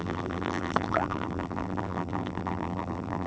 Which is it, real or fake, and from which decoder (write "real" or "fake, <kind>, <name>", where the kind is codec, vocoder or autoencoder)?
fake, vocoder, BigVGAN v2